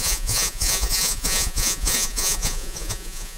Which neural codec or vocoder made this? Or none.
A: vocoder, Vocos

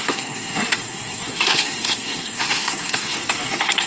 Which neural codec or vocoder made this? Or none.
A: codec, SNAC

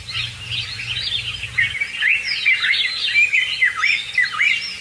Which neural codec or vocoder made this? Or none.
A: none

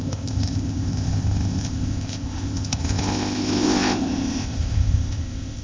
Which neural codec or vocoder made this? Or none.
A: codec, ZipCodec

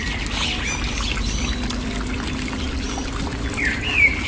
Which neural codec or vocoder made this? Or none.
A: none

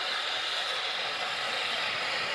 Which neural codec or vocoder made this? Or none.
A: none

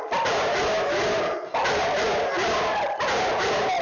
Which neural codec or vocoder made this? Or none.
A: none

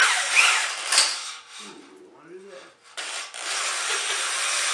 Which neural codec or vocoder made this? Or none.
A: none